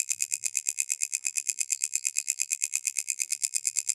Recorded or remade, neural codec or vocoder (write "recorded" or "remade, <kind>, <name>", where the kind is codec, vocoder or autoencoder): remade, vocoder, BigVGAN v2